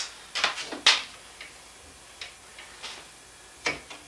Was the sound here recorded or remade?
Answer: recorded